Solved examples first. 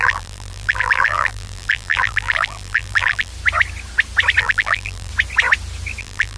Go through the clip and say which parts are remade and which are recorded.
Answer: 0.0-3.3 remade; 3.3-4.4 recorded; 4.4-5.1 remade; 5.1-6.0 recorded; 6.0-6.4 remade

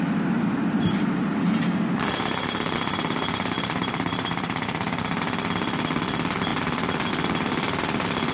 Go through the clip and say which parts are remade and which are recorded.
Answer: 0.0-1.3 recorded; 1.3-5.2 remade; 5.2-8.3 recorded

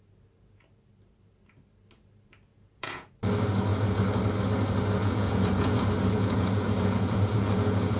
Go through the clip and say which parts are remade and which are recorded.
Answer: 0.0-2.5 recorded; 2.5-3.1 remade; 3.1-5.0 recorded; 5.0-8.0 remade

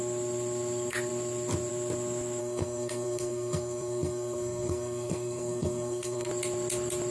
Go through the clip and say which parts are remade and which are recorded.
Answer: 0.0-2.4 recorded; 2.4-6.3 remade; 6.3-7.1 recorded

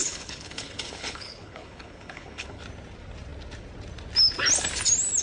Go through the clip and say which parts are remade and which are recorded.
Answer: 0.0-2.6 remade; 2.6-5.2 recorded

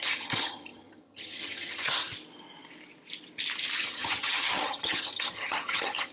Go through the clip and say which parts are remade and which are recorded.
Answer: 0.0-2.1 remade; 2.1-3.8 recorded; 3.8-6.1 remade

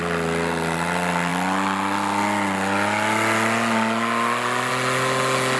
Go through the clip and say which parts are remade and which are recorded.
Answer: 0.0-5.6 recorded

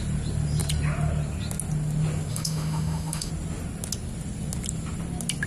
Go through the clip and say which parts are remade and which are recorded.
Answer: 0.0-2.3 recorded; 2.3-3.3 remade; 3.3-5.5 recorded